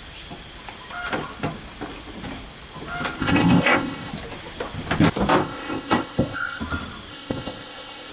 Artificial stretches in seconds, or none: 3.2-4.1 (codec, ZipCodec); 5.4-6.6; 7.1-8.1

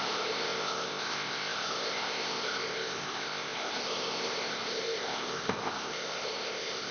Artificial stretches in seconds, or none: 0.0-6.9 (codec, ZipCodec)

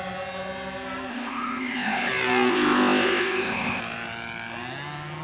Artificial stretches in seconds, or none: 1.1-2.1 (codec, ZipCodec); 2.5-3.8

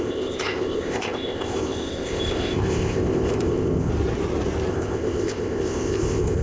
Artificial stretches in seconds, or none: 0.0-3.9 (codec, ZipCodec); 4.7-6.4

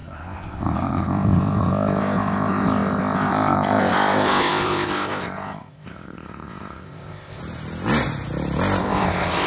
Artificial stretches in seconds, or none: 0.0-7.4 (codec, ZipCodec); 8.8-9.5

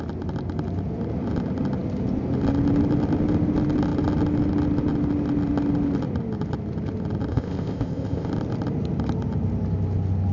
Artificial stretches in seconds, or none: 7.3-8.3 (codec, ZipCodec)

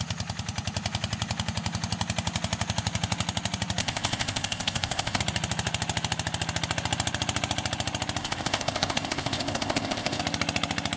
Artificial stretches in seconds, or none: 3.8-5.2 (codec, ZipCodec); 8.2-10.2

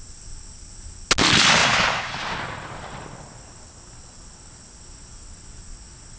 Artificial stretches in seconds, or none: none